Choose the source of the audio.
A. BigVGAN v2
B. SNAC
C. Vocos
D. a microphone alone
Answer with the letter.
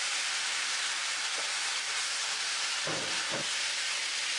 D